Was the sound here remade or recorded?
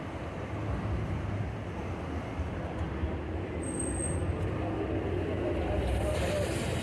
recorded